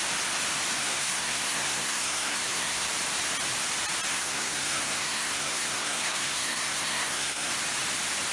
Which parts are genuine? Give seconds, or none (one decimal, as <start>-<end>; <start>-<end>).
0.0-0.8; 2.9-4.1; 7.5-8.3